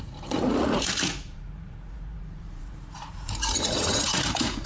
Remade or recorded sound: remade